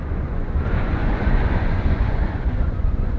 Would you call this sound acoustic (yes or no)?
no